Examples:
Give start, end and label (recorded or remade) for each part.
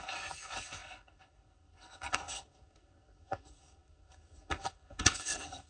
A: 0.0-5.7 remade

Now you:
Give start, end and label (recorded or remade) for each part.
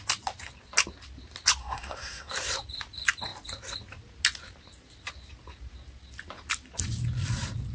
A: 0.0-1.6 recorded; 1.6-2.3 remade; 2.3-7.7 recorded